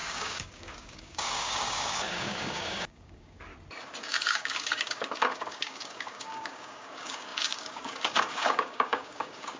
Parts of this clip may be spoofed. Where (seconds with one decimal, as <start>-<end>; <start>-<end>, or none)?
0.0-3.5; 4.1-9.6